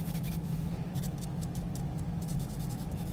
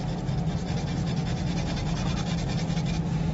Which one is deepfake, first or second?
first